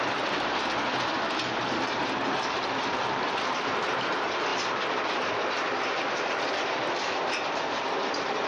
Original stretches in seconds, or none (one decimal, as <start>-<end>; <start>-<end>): 0.0-8.5